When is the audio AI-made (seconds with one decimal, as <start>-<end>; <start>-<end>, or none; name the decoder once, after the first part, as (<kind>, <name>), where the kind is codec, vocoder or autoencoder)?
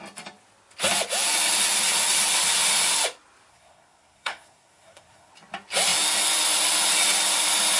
3.5-5.3 (codec, SNAC)